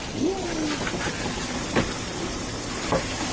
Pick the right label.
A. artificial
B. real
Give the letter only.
B